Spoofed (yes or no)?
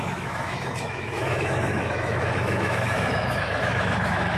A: yes